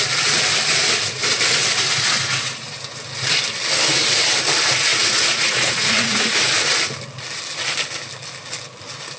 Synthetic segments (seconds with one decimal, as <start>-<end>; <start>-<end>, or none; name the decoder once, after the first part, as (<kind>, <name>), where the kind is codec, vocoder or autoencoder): 4.9-6.5 (vocoder, Vocos)